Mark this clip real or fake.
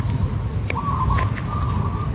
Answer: real